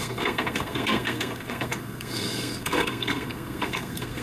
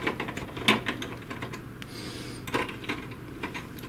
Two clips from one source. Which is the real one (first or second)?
second